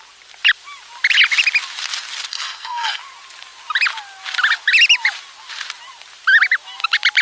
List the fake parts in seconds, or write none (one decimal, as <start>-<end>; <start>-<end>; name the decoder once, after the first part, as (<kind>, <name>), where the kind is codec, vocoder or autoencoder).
2.3-3.0 (codec, SNAC)